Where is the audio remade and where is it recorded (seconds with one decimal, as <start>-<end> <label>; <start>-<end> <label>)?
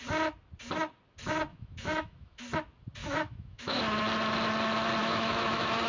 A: 0.0-1.5 recorded; 1.5-2.4 remade; 2.4-3.0 recorded; 3.0-3.8 remade; 3.8-5.0 recorded; 5.0-5.9 remade